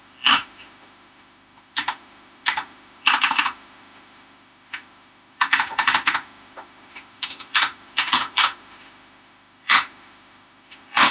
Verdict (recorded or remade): remade